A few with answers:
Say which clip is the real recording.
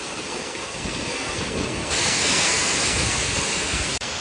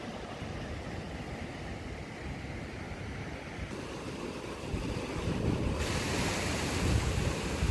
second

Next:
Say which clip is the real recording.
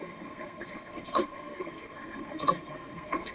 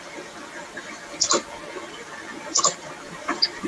second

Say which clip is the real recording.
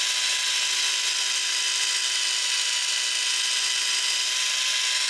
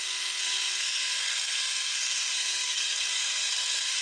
first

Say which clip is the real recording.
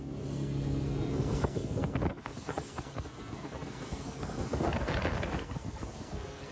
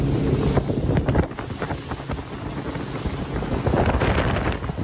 second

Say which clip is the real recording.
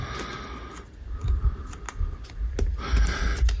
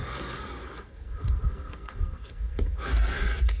first